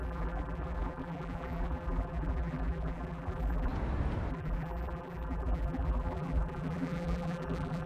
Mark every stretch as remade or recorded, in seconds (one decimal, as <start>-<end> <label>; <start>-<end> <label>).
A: 0.0-3.7 remade; 3.7-4.3 recorded; 4.3-7.9 remade